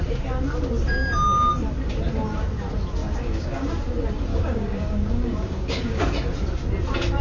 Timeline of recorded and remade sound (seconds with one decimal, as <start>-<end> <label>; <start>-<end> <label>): 0.0-3.0 recorded; 3.0-3.7 remade; 3.7-4.3 recorded; 4.3-6.0 remade; 6.0-7.2 recorded